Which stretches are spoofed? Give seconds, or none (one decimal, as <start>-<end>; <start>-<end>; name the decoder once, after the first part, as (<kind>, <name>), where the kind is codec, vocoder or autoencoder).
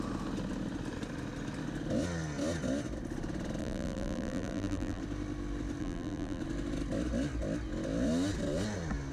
3.6-5.0 (vocoder, BigVGAN v2); 5.8-6.4